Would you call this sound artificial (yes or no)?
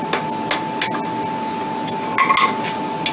no